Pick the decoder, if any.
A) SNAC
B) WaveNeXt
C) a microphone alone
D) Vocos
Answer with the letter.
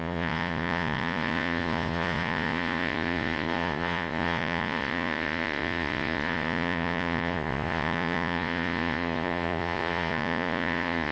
D